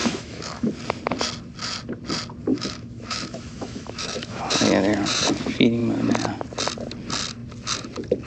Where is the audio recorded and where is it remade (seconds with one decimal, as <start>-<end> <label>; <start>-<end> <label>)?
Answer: 0.0-0.7 remade; 0.7-2.5 recorded; 2.5-4.4 remade; 4.4-8.3 recorded